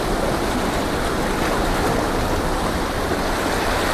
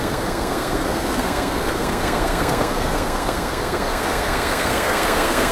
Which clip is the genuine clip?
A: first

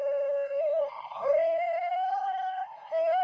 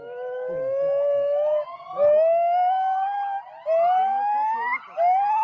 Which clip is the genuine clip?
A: second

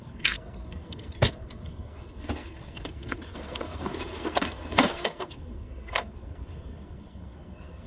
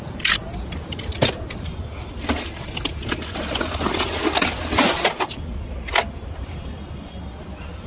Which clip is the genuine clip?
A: second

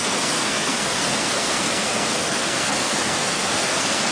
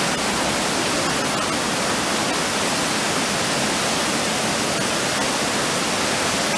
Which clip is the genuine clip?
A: second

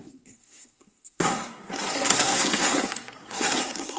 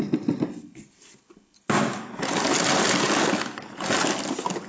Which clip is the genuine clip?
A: second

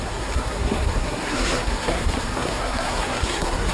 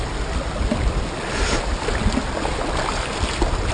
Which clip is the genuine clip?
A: second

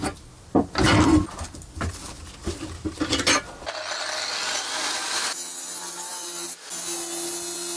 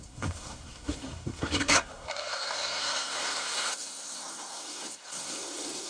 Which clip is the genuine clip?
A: first